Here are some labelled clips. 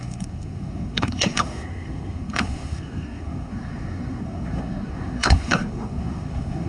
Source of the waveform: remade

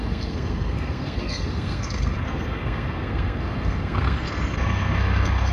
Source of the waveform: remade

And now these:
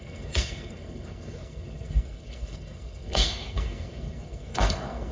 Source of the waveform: remade